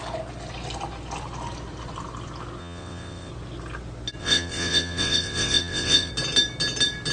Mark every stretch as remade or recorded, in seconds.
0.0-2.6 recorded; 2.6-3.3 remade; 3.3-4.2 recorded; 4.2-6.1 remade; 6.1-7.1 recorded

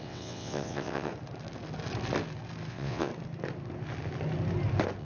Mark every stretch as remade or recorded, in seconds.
0.0-1.1 remade; 1.1-2.7 recorded; 2.7-3.1 remade; 3.1-5.0 recorded

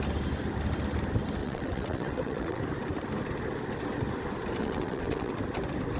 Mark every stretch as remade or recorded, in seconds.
0.0-1.4 recorded; 1.4-2.6 remade; 2.6-4.6 recorded; 4.6-5.3 remade; 5.3-6.0 recorded